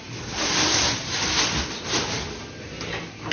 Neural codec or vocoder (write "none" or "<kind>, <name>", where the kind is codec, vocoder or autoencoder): none